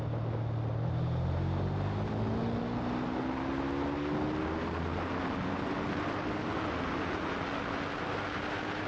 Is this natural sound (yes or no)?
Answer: yes